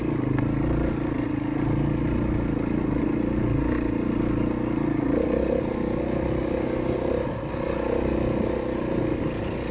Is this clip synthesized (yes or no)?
no